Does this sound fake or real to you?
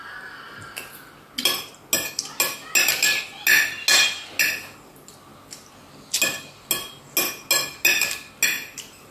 real